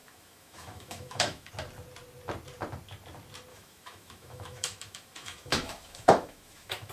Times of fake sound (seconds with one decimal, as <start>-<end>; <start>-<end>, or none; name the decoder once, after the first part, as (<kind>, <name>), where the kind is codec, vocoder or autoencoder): 0.0-1.5 (autoencoder, DAC-VAE); 3.5-6.9